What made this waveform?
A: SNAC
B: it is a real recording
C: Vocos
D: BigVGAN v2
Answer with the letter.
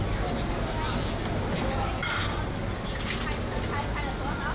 B